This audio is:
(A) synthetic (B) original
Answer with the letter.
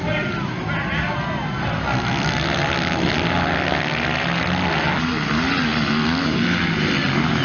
B